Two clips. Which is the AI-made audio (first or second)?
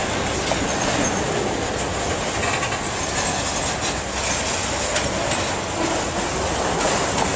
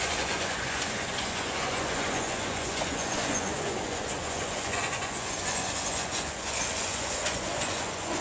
second